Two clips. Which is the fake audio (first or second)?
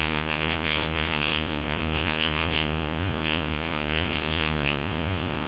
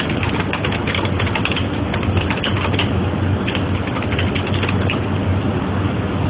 first